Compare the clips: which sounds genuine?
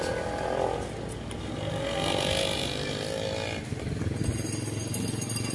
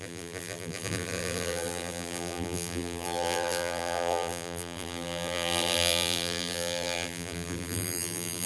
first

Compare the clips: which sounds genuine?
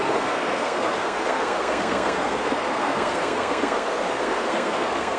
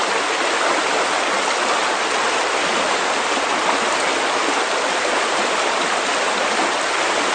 second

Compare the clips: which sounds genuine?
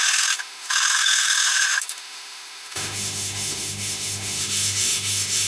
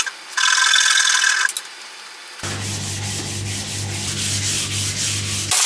second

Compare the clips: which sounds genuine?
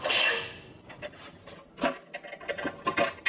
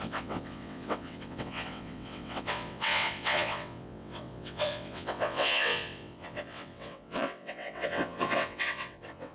first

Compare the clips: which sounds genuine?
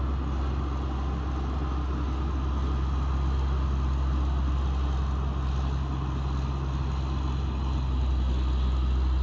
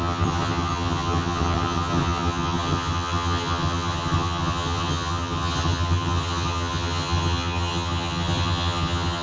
first